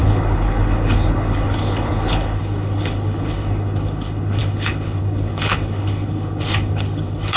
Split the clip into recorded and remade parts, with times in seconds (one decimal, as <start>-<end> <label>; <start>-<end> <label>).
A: 0.0-7.4 remade